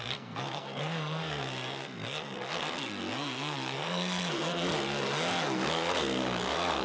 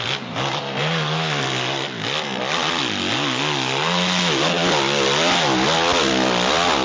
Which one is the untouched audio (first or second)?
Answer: second